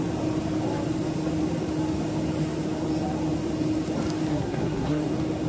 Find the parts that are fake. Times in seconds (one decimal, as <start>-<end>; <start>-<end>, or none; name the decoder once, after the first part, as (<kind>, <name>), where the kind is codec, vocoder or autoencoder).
4.3-5.1 (codec, SNAC)